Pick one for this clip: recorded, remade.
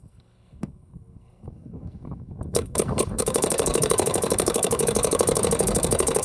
remade